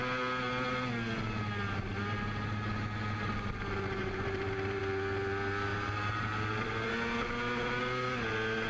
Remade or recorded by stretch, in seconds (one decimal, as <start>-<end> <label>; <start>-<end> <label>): 0.0-4.0 recorded; 4.0-4.8 remade; 4.8-5.7 recorded; 5.7-6.9 remade; 6.9-8.7 recorded